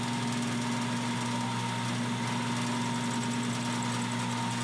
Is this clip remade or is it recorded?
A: recorded